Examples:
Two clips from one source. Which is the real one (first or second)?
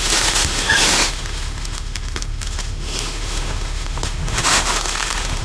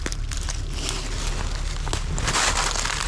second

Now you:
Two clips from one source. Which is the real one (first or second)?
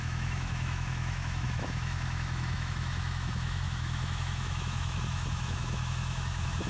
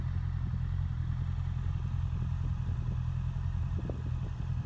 second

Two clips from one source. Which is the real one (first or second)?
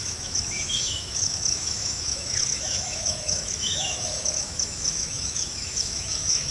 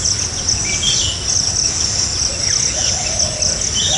second